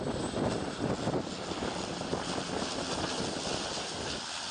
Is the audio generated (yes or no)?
no